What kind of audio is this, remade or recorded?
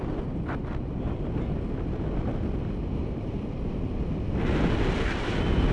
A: recorded